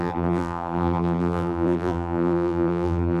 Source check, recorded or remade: remade